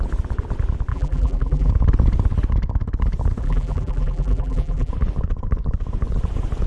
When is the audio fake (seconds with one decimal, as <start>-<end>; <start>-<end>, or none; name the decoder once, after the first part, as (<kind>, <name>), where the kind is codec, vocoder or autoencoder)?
0.9-1.7 (vocoder, BigVGAN v2); 3.4-4.9